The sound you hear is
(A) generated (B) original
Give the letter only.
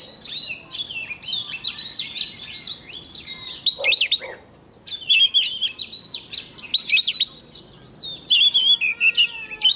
B